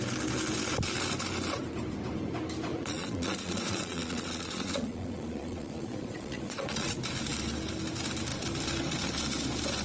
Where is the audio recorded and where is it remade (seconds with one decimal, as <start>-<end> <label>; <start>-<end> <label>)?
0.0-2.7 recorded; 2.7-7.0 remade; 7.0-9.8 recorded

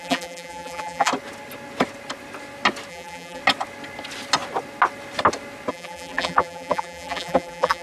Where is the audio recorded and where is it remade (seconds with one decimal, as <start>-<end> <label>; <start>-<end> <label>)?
0.0-1.1 remade; 1.1-2.9 recorded; 2.9-3.4 remade; 3.4-5.7 recorded; 5.7-7.8 remade

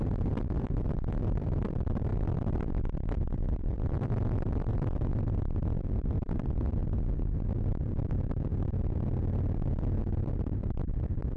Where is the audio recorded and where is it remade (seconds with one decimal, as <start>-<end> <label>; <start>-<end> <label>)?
0.0-6.8 remade; 6.8-7.7 recorded; 7.7-8.5 remade; 8.5-10.0 recorded; 10.0-11.4 remade

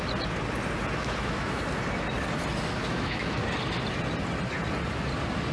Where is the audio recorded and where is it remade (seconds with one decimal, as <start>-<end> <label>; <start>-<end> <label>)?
0.0-1.0 recorded; 1.0-1.6 remade; 1.6-2.8 recorded; 2.8-3.4 remade; 3.4-5.5 recorded

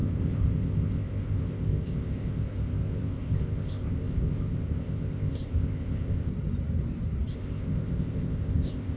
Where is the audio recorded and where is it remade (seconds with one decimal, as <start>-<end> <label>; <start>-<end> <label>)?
0.0-6.3 remade; 6.3-7.3 recorded; 7.3-9.0 remade

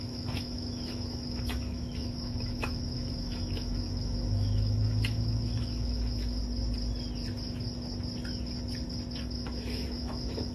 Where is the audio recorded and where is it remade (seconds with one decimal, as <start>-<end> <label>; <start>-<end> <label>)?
0.0-6.4 remade; 6.4-9.2 recorded; 9.2-10.5 remade